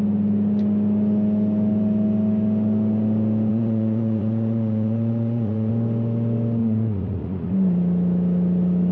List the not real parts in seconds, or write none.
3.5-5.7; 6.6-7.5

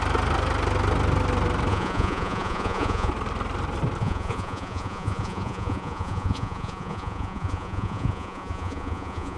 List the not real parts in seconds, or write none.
1.7-3.1; 4.0-9.4